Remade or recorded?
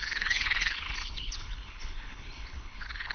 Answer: remade